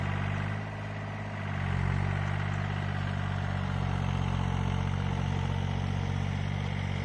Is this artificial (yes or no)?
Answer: no